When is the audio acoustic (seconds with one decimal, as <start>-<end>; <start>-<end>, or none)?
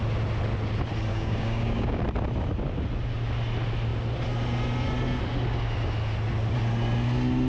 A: 0.0-1.1; 2.0-7.5